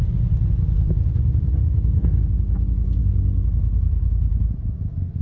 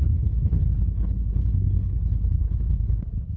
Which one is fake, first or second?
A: second